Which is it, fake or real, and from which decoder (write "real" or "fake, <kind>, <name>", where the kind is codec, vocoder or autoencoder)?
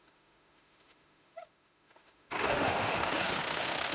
fake, autoencoder, DAC-VAE